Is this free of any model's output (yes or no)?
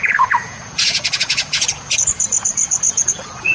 no